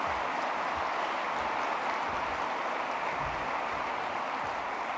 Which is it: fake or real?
real